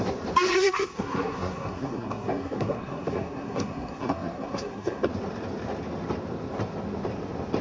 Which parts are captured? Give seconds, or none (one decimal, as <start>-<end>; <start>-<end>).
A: 0.0-0.5; 5.1-7.6